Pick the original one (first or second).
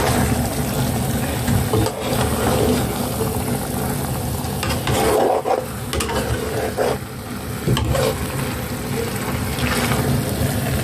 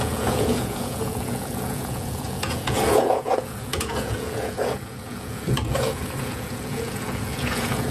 first